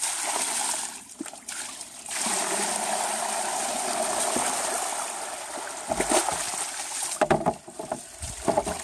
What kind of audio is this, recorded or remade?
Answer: recorded